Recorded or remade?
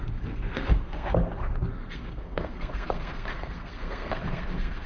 remade